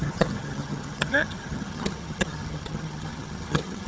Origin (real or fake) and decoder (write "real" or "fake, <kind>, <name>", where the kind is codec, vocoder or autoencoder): fake, vocoder, HiFi-GAN